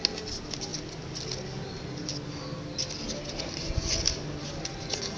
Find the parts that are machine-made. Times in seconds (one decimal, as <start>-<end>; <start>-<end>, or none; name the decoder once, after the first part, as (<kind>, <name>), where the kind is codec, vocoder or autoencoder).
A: none